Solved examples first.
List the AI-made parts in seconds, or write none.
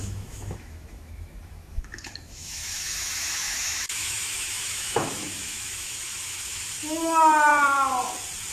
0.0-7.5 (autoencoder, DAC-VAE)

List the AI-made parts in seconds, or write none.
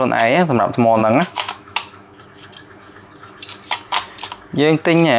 1.0-2.2 (autoencoder, DAC-VAE)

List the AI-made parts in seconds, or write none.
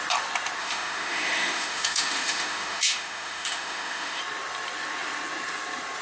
0.6-4.2 (autoencoder, DAC-VAE)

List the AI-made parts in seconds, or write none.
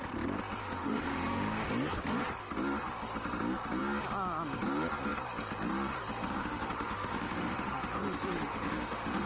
0.6-1.7 (autoencoder, DAC-VAE); 6.4-9.3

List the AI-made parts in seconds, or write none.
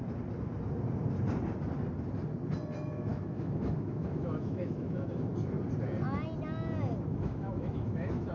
3.1-5.3 (autoencoder, DAC-VAE); 7.1-8.3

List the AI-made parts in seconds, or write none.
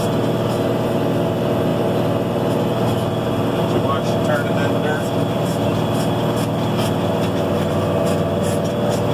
none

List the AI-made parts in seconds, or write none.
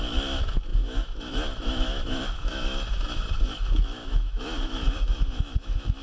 0.0-6.0 (autoencoder, DAC-VAE)